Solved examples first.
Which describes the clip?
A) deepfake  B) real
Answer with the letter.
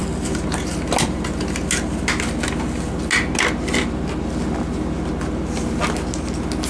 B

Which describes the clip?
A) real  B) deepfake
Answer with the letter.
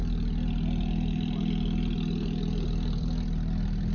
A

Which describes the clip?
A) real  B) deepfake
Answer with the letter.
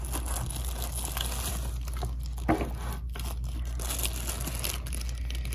A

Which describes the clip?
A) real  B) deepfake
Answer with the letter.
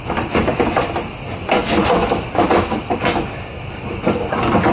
A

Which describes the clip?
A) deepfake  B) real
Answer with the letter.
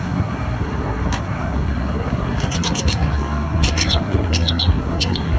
A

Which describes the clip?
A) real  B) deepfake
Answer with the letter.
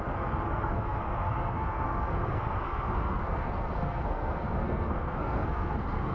B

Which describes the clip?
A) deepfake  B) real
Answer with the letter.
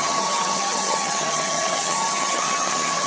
A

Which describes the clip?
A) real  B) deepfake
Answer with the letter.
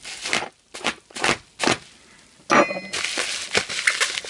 A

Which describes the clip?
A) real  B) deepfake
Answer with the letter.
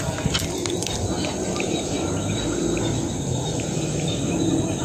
A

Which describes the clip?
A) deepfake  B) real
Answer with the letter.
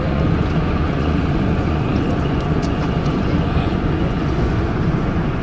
A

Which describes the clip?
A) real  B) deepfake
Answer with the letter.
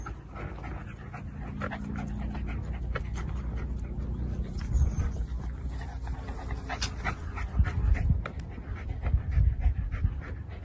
A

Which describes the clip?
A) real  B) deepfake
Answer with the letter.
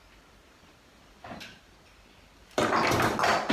A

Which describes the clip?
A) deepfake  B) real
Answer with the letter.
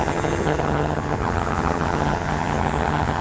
A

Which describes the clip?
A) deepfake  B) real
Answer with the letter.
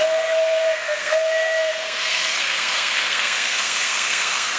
A